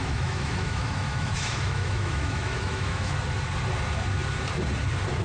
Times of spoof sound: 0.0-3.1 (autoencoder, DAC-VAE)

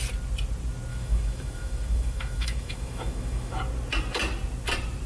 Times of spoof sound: 0.9-3.6 (autoencoder, DAC-VAE)

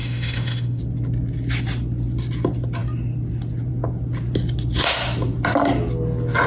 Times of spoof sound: 0.0-0.8 (autoencoder, DAC-VAE)